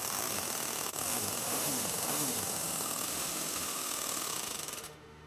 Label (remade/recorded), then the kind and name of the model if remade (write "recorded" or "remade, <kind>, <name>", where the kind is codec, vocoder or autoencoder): remade, autoencoder, DAC-VAE